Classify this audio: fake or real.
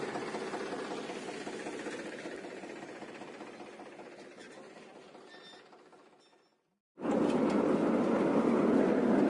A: real